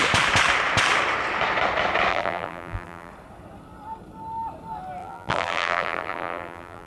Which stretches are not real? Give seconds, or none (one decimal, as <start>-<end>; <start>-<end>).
2.1-3.1; 5.0-6.9